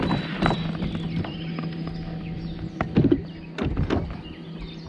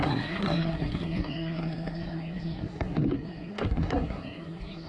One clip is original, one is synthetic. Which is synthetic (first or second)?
second